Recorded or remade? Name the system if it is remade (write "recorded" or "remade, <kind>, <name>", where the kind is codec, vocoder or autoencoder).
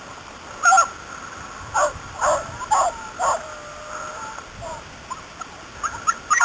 recorded